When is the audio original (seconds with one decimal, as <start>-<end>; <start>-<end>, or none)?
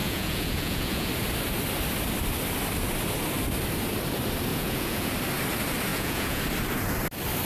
1.1-4.5; 5.1-5.9; 6.4-7.4